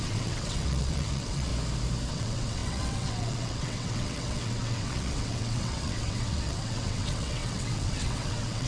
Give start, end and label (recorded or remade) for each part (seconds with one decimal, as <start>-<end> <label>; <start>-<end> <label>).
0.0-1.5 remade; 1.5-2.1 recorded; 2.1-8.7 remade